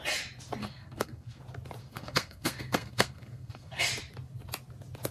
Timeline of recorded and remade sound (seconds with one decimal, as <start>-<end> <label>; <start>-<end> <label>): 0.0-0.6 recorded; 0.6-1.4 remade; 1.4-1.8 recorded; 1.8-3.8 remade; 3.8-5.1 recorded